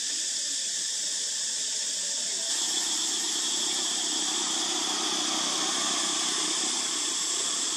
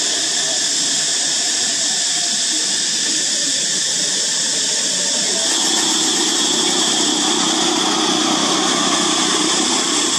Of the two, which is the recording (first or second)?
second